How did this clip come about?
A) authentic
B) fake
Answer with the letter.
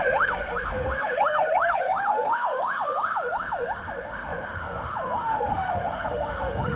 B